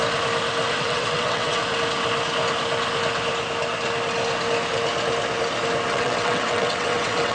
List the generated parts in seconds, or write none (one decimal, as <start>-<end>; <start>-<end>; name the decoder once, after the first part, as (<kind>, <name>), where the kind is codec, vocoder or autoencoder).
0.7-1.6 (vocoder, WaveNeXt); 5.9-7.3